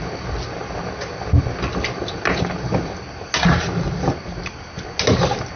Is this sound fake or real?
real